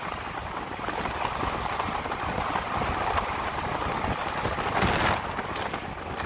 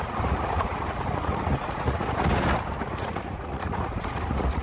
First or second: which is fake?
second